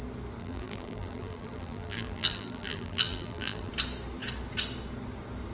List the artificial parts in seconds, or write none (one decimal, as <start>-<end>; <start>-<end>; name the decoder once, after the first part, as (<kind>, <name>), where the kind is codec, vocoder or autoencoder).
0.4-3.7 (vocoder, BigVGAN v2)